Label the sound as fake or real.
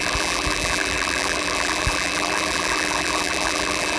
fake